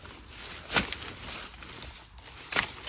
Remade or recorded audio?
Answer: recorded